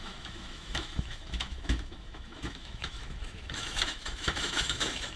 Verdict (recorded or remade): remade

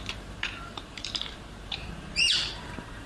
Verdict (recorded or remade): remade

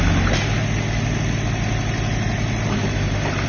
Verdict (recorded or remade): recorded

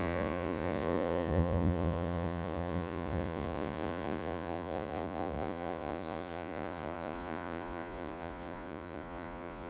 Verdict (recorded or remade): remade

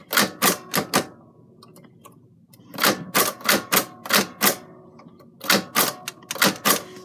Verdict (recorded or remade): recorded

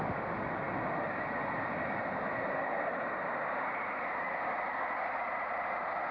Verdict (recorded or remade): recorded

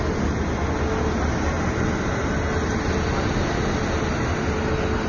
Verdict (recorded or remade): recorded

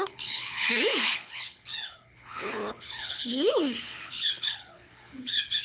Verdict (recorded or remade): remade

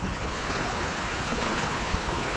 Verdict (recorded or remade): remade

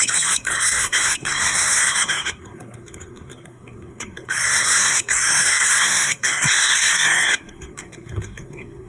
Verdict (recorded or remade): remade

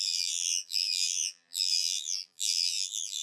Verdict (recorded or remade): remade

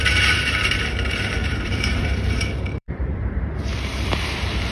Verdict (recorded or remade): remade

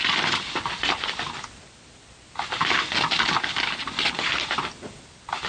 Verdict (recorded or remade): recorded